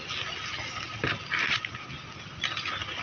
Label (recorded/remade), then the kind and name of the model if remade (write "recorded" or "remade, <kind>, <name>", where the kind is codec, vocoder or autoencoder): recorded